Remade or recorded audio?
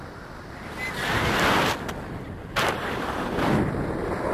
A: recorded